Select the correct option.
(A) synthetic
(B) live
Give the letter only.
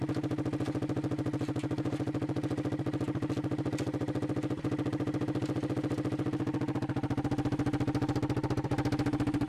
B